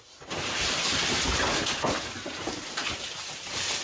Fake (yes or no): yes